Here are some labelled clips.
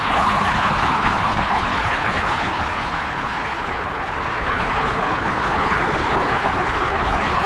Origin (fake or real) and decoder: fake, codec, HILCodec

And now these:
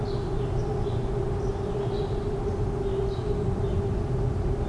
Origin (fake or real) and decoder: real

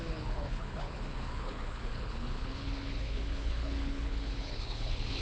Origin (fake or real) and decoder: fake, codec, HILCodec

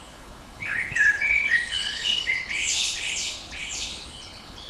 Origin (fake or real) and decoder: fake, codec, HILCodec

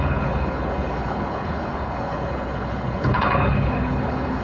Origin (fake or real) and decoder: fake, codec, HILCodec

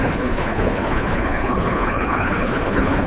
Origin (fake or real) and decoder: fake, codec, HILCodec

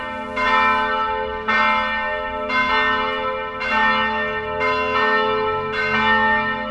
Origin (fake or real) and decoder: real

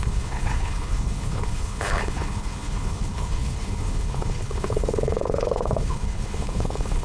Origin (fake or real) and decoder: fake, codec, HILCodec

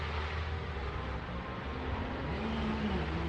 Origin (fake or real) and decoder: real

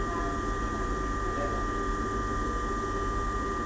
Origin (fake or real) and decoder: real